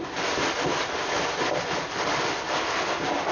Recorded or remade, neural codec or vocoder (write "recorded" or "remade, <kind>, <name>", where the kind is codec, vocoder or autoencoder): recorded